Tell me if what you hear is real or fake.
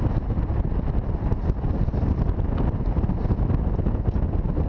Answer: real